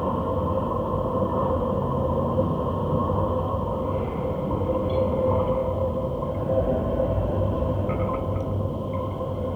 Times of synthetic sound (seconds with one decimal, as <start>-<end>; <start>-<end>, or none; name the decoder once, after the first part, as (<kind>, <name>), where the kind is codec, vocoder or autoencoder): none